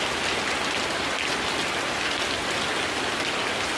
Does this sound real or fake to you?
real